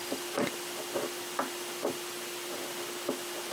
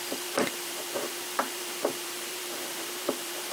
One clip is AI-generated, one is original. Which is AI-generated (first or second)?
second